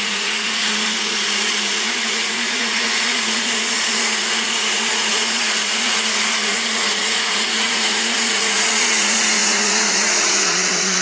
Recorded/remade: remade